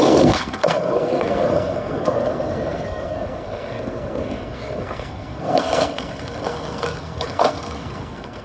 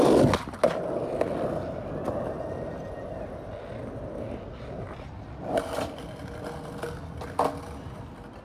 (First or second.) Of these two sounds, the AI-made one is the first